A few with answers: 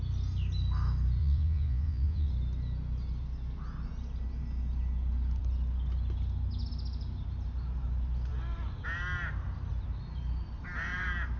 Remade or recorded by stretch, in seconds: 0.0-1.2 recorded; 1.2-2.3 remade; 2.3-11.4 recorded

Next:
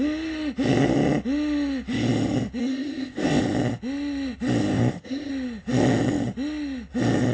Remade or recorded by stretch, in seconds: 0.0-2.6 recorded; 2.6-3.4 remade; 3.4-4.7 recorded; 4.7-5.3 remade; 5.3-7.3 recorded

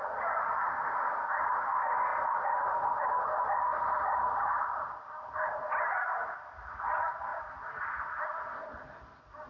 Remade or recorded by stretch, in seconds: 0.0-2.1 recorded; 2.1-3.0 remade; 3.0-3.7 recorded; 3.7-5.8 remade; 5.8-9.5 recorded